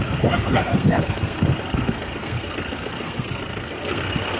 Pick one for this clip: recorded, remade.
remade